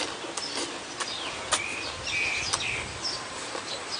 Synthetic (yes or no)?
no